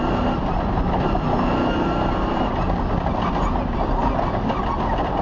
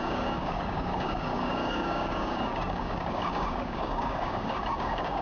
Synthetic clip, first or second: second